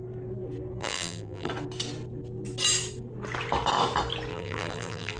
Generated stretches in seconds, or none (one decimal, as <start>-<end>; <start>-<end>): 0.8-1.5; 4.3-5.2